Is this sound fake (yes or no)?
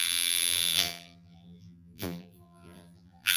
yes